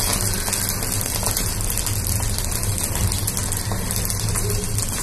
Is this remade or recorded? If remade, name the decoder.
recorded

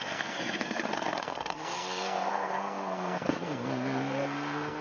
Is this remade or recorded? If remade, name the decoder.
remade, codec, SNAC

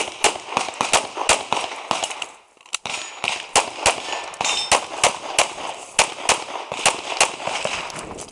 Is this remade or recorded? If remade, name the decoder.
recorded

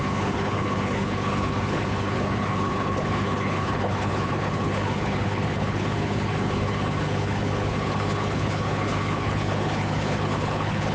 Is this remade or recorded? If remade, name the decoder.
remade, codec, HILCodec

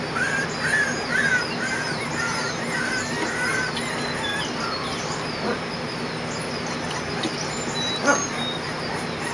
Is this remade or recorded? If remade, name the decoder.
recorded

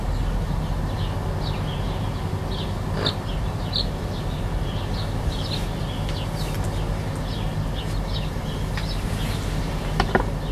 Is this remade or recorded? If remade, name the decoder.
recorded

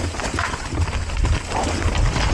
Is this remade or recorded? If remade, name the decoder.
recorded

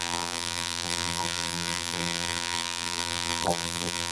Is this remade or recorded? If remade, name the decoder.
remade, vocoder, BigVGAN v2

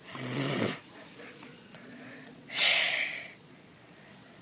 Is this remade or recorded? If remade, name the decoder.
remade, vocoder, Vocos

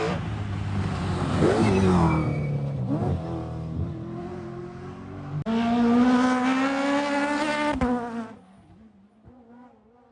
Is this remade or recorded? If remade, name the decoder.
recorded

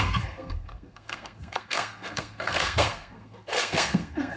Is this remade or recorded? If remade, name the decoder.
remade, codec, SNAC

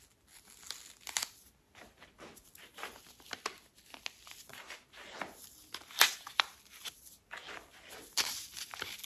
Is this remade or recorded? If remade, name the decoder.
recorded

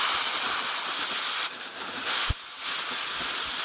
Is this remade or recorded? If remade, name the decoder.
recorded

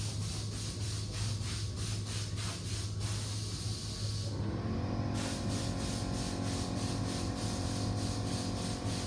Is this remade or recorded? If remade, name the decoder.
recorded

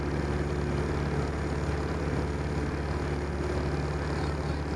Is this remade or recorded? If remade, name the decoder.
recorded